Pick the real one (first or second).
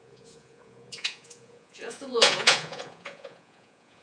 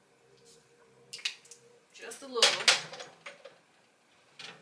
second